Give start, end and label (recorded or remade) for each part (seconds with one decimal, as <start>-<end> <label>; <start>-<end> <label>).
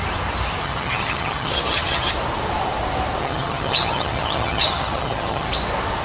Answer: 0.0-0.6 recorded; 0.6-2.1 remade; 2.1-3.2 recorded; 3.2-5.5 remade; 5.5-6.0 recorded